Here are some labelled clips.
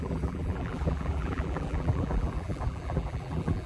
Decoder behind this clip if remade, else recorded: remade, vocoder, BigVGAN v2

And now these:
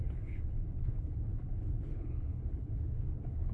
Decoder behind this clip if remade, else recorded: remade, codec, HILCodec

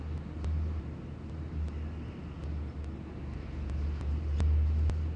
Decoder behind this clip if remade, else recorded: recorded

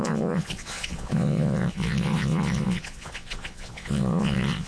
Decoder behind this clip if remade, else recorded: remade, vocoder, Vocos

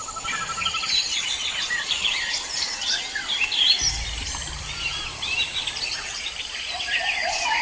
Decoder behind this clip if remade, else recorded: remade, vocoder, BigVGAN v2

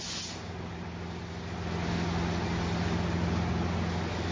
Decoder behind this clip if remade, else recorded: recorded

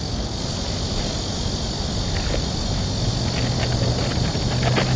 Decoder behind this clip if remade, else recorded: recorded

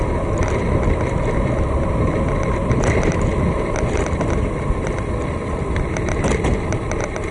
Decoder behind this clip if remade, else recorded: remade, vocoder, BigVGAN v2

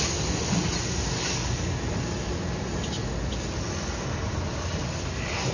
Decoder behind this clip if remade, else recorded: recorded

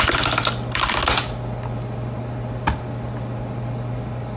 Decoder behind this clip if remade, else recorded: recorded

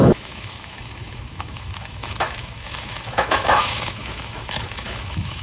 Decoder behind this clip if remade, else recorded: remade, autoencoder, DAC-VAE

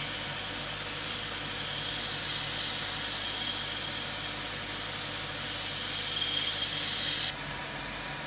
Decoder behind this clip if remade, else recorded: recorded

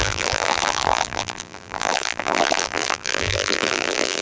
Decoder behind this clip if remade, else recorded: remade, vocoder, BigVGAN v2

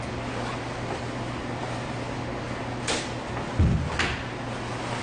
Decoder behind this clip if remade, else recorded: recorded